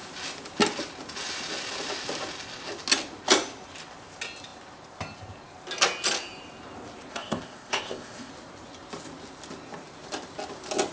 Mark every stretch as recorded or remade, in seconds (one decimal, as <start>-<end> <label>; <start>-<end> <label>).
0.0-7.1 recorded; 7.1-8.3 remade; 8.3-10.9 recorded